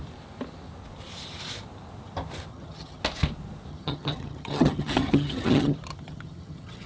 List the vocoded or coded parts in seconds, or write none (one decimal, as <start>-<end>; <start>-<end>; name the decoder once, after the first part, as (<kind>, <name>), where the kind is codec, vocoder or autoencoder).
2.5-3.0 (vocoder, HiFi-GAN); 3.7-6.9